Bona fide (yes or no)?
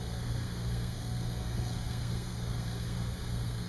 no